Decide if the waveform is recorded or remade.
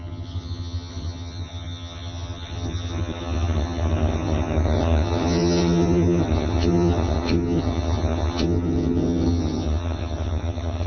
remade